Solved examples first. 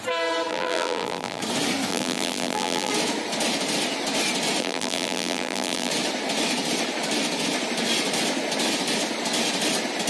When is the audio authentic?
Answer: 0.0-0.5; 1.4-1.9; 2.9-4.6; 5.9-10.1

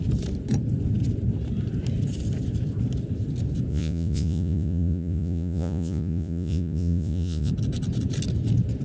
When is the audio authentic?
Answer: 0.0-3.7; 7.5-8.8

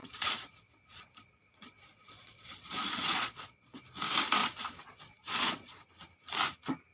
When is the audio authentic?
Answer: 3.8-4.4; 5.9-6.9

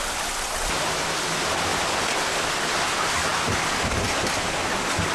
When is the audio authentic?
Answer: 0.0-5.1

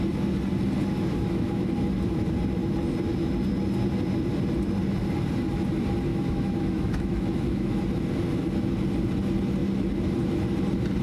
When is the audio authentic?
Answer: 0.0-1.1; 1.7-6.1; 7.8-11.0